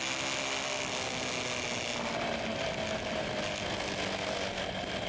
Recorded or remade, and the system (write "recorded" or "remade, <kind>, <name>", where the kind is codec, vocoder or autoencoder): recorded